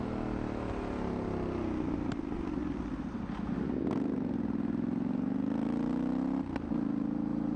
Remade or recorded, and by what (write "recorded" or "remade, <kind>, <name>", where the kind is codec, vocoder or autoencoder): recorded